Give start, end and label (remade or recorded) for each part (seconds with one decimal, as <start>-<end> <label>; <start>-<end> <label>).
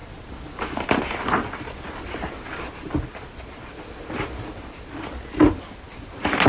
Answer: 0.0-6.5 recorded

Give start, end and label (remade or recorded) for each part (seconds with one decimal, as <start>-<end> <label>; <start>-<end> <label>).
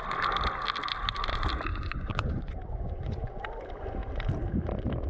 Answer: 0.0-1.7 recorded; 1.7-3.4 remade; 3.4-5.1 recorded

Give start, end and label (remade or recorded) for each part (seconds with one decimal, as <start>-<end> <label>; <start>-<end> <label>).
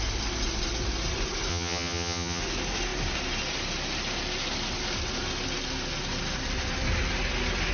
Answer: 0.0-1.5 recorded; 1.5-2.4 remade; 2.4-7.7 recorded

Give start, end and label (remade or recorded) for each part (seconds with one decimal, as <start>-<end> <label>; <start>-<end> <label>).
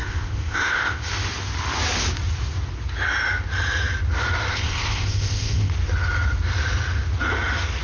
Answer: 0.0-1.1 remade; 1.1-4.5 recorded; 4.5-5.7 remade; 5.7-7.8 recorded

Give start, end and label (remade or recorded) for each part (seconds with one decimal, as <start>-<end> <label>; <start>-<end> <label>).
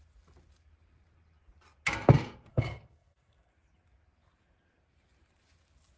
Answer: 0.0-2.5 recorded; 2.5-3.5 remade; 3.5-6.0 recorded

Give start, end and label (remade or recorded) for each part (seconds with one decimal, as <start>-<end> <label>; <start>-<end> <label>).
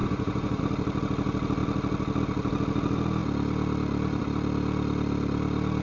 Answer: 0.0-0.6 remade; 0.6-5.8 recorded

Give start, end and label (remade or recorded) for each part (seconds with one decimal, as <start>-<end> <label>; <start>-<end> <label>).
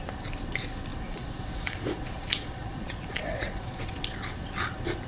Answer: 0.0-0.9 recorded; 0.9-4.0 remade; 4.0-5.1 recorded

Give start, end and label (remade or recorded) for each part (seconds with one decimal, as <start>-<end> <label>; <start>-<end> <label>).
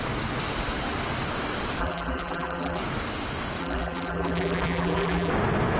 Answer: 0.0-1.8 recorded; 1.8-2.8 remade; 2.8-3.6 recorded; 3.6-5.3 remade; 5.3-5.8 recorded